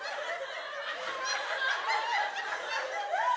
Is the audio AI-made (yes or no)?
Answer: no